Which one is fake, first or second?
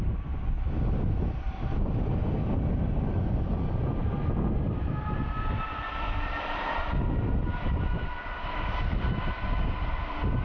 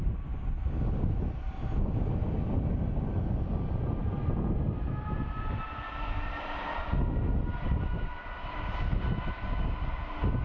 first